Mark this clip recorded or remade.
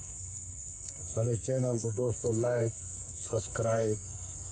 remade